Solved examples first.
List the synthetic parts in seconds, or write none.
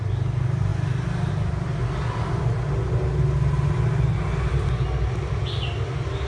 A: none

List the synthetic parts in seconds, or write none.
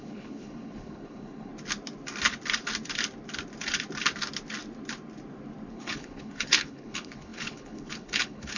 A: 0.0-1.5 (codec, HILCodec); 5.7-8.6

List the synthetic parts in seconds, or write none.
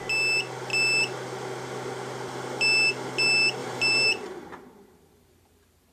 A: 3.6-5.9 (vocoder, BigVGAN v2)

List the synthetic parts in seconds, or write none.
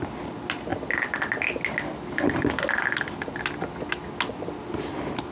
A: none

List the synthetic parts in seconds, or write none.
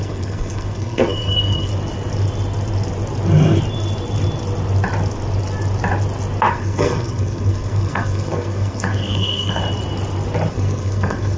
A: 0.0-1.7 (codec, SNAC); 6.5-9.6; 10.5-11.4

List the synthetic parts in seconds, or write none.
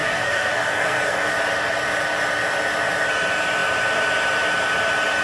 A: 0.0-1.3 (codec, SNAC)